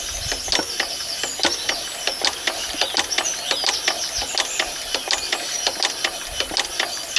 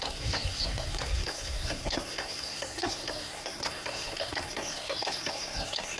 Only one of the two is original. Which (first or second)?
first